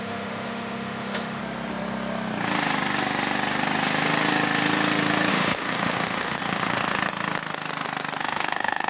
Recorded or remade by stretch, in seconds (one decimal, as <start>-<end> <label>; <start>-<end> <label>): 0.0-1.4 remade; 1.4-5.3 recorded; 5.3-7.0 remade; 7.0-8.2 recorded; 8.2-8.9 remade